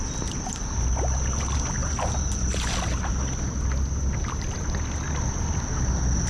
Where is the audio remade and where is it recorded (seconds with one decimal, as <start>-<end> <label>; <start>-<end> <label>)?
0.0-6.3 recorded